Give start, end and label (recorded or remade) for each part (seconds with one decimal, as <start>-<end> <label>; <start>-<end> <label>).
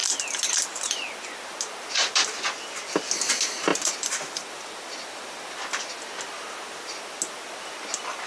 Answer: 0.0-3.7 recorded; 3.7-5.2 remade; 5.2-8.3 recorded